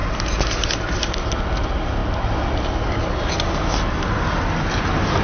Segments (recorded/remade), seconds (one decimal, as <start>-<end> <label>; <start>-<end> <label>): 0.0-5.2 recorded